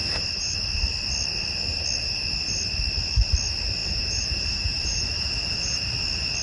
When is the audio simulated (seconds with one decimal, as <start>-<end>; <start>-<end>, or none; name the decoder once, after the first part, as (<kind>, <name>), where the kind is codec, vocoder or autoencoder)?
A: 0.0-0.6 (vocoder, BigVGAN v2); 3.8-5.8